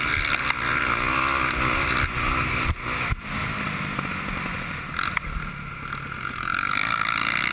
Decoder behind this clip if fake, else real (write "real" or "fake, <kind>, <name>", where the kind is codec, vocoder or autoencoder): real